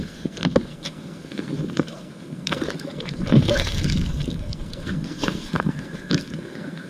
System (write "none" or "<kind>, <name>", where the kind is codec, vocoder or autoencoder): codec, SNAC